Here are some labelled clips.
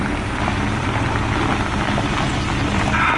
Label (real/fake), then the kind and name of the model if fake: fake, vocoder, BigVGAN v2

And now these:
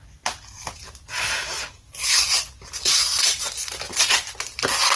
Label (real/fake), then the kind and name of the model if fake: real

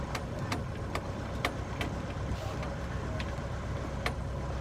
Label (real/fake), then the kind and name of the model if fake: real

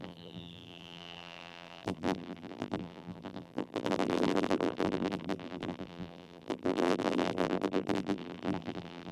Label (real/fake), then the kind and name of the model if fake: fake, vocoder, BigVGAN v2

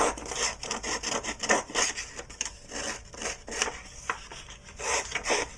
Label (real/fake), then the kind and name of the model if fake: fake, vocoder, BigVGAN v2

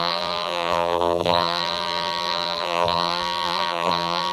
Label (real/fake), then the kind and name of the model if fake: fake, vocoder, BigVGAN v2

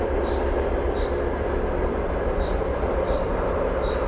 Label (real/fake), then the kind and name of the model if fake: fake, vocoder, BigVGAN v2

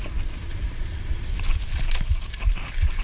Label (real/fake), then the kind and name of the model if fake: fake, vocoder, BigVGAN v2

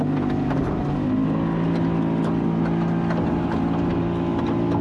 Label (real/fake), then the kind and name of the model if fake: real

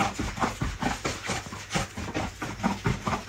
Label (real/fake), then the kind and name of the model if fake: real